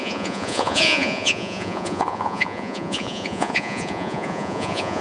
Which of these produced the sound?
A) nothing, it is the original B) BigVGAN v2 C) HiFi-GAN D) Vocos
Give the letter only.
D